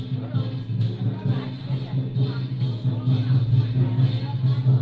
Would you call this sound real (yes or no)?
yes